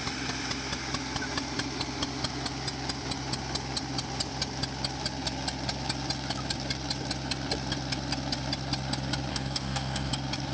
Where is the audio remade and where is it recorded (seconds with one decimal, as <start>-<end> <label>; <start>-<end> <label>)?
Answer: 0.0-9.3 recorded; 9.3-10.1 remade; 10.1-10.5 recorded